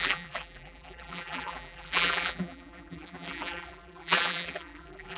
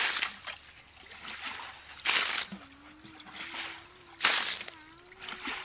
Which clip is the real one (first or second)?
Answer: second